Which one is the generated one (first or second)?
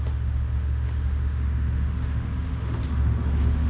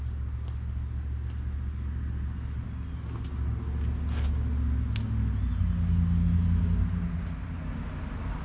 first